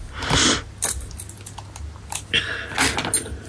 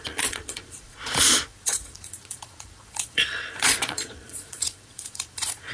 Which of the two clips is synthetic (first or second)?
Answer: second